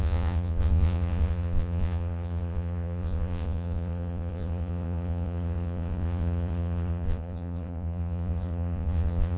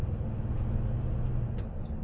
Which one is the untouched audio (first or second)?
second